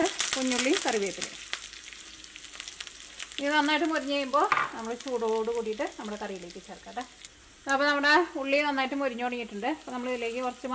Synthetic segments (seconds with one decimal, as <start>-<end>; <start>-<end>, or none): none